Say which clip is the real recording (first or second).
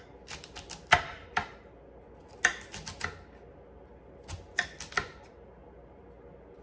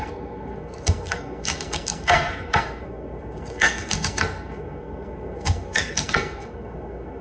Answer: first